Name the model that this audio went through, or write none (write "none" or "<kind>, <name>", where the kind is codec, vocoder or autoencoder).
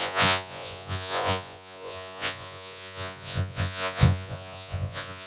vocoder, Vocos